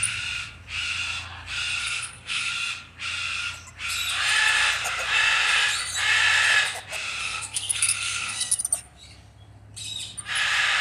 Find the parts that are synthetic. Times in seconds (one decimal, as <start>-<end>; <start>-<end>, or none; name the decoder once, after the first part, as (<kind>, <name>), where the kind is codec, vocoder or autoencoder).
1.8-2.5 (codec, SNAC); 7.2-8.6